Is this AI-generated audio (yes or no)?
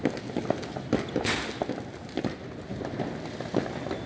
no